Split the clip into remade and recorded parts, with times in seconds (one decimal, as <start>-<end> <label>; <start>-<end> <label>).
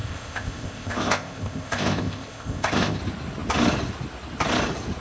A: 0.0-3.0 remade; 3.0-5.0 recorded